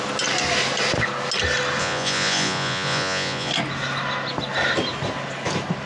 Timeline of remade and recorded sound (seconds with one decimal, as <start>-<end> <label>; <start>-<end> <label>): 0.0-1.8 recorded; 1.8-3.5 remade; 3.5-5.9 recorded